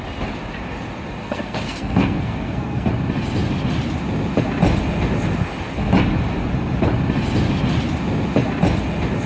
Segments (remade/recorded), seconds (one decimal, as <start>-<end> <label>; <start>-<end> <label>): 0.0-1.2 recorded; 1.2-2.9 remade; 2.9-9.3 recorded